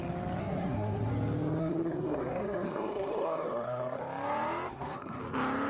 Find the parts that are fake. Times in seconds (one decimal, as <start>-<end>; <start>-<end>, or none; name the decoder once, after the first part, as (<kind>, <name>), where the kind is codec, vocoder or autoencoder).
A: 0.4-1.1 (codec, SNAC); 1.6-4.0; 4.7-5.2